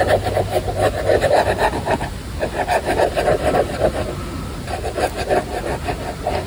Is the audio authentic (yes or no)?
yes